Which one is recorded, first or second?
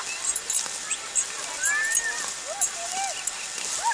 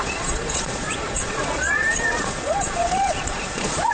first